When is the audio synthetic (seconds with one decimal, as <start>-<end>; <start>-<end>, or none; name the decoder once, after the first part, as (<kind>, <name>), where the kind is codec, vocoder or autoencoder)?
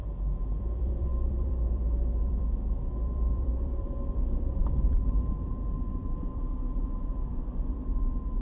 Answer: 0.6-8.4 (vocoder, BigVGAN v2)